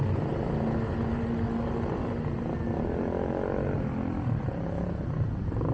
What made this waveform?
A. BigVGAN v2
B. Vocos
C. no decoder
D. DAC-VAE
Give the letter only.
C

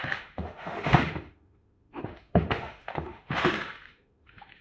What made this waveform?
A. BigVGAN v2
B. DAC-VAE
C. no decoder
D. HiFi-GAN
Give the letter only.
B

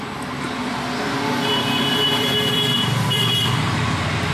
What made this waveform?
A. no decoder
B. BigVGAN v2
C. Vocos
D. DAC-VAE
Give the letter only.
B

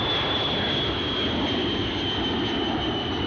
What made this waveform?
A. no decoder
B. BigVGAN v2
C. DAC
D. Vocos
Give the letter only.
A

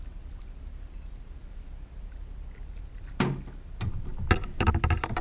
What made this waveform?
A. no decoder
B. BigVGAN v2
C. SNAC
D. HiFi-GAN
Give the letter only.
A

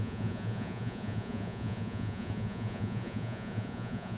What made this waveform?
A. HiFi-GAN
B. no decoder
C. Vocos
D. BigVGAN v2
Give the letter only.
C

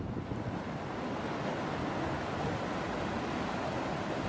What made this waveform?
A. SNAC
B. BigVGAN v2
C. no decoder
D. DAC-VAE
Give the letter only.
C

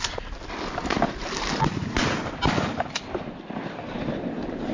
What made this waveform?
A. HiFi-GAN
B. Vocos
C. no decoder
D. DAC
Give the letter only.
C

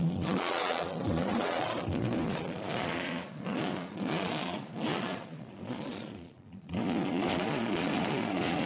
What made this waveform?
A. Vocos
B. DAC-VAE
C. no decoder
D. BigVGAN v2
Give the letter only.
A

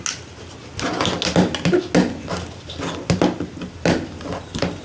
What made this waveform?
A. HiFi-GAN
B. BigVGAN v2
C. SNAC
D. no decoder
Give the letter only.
D